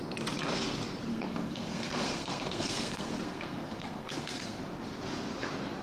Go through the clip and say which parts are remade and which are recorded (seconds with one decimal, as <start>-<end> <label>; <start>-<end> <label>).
0.0-1.1 recorded; 1.1-4.6 remade; 4.6-5.8 recorded